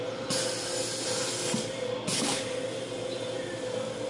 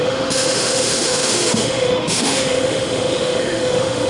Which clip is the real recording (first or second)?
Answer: first